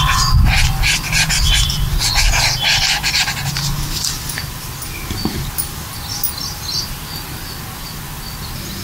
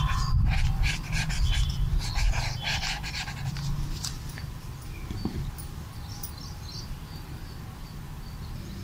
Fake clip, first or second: second